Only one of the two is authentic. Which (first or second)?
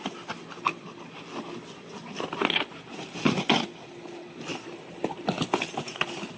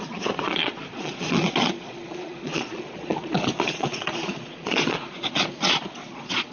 first